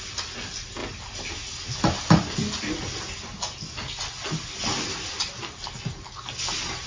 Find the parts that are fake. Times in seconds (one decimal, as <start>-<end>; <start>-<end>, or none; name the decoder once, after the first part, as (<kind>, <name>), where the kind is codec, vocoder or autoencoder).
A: 0.8-1.3 (vocoder, BigVGAN v2)